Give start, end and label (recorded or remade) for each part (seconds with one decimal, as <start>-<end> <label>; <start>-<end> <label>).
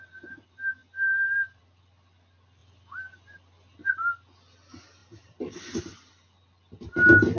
0.0-7.4 recorded